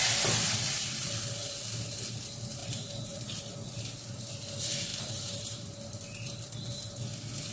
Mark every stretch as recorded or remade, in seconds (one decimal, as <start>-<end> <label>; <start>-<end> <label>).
0.0-2.6 recorded; 2.6-3.4 remade; 3.4-4.9 recorded; 4.9-5.6 remade; 5.6-7.5 recorded